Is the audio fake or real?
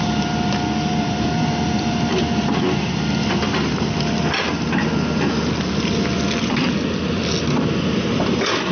fake